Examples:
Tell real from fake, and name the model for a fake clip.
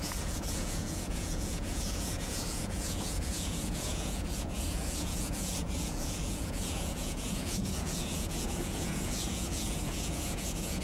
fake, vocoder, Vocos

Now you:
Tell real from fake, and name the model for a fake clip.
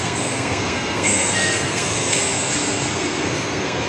fake, codec, SNAC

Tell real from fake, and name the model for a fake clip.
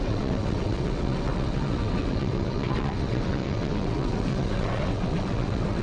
fake, vocoder, WaveNeXt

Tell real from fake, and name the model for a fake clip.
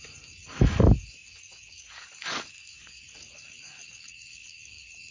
fake, codec, DAC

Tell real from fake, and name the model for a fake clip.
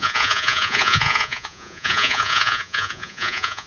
fake, vocoder, Vocos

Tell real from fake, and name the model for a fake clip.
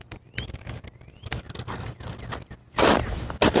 real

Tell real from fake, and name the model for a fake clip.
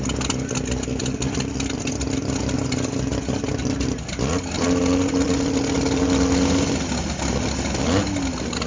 real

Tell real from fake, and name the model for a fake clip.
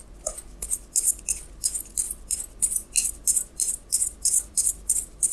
real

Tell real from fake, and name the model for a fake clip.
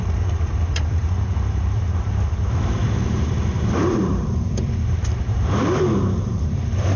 fake, vocoder, BigVGAN v2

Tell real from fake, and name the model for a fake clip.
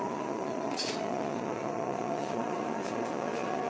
fake, vocoder, Vocos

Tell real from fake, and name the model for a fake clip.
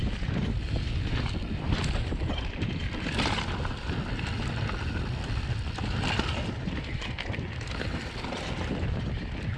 real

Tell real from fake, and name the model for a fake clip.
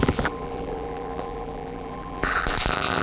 fake, vocoder, BigVGAN v2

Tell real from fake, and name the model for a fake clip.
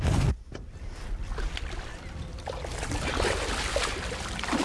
real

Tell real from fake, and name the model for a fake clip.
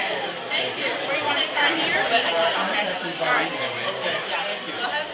fake, vocoder, BigVGAN v2